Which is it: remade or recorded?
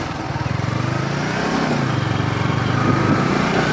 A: recorded